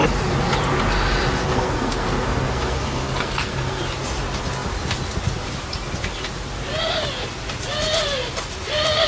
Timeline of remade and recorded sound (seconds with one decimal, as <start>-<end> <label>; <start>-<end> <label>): 0.0-1.4 recorded; 1.4-3.8 remade; 3.8-9.1 recorded